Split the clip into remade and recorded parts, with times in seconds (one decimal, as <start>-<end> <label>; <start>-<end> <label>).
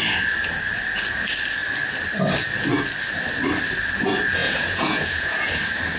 0.0-4.4 recorded; 4.4-5.5 remade; 5.5-6.0 recorded